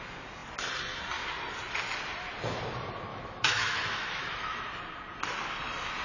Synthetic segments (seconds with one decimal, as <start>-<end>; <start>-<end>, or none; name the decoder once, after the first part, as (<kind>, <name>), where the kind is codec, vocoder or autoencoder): 3.1-4.8 (autoencoder, DAC-VAE)